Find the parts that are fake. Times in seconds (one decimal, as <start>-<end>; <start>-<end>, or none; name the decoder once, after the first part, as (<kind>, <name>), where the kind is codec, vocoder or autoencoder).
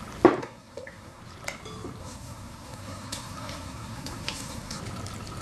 0.4-1.2 (codec, SNAC); 2.0-4.8